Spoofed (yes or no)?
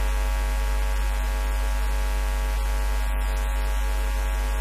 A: no